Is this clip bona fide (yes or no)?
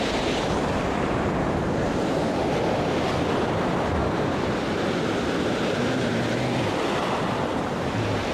yes